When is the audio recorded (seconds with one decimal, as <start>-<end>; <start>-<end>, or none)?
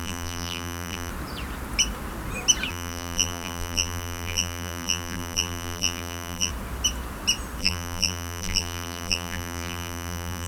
1.1-2.7; 6.5-7.6